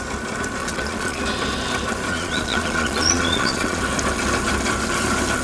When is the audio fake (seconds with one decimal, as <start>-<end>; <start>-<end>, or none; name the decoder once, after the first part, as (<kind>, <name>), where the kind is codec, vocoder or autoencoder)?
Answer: 0.6-1.2 (vocoder, Vocos); 2.1-3.8